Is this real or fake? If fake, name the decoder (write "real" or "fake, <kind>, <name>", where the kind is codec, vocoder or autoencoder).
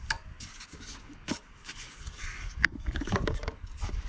fake, codec, DAC